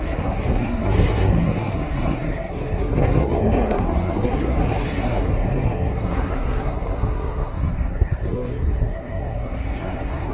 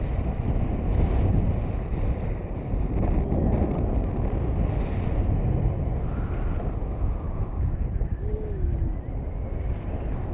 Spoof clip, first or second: first